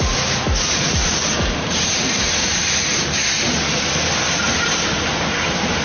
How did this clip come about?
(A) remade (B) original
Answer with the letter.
A